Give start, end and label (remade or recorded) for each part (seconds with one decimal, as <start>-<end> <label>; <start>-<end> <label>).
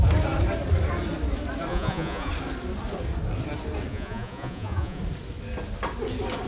0.0-1.7 recorded; 1.7-2.3 remade; 2.3-3.9 recorded; 3.9-5.0 remade; 5.0-6.5 recorded